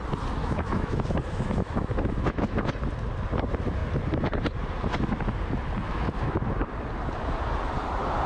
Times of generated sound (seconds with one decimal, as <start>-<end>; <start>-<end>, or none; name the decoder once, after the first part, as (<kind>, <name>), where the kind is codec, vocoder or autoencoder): 0.4-2.7 (autoencoder, DAC-VAE); 5.9-6.4